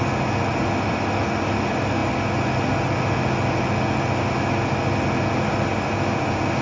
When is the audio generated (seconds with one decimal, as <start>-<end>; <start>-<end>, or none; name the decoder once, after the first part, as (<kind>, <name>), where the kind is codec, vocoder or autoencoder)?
none